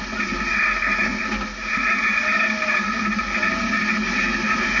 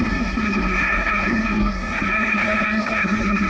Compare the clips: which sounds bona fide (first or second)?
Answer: first